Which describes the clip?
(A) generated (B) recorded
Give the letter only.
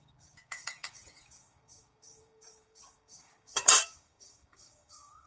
A